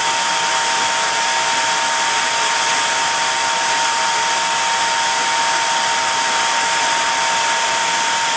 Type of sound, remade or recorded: recorded